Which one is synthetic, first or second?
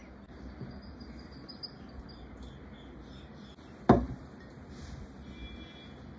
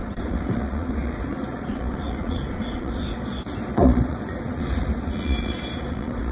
second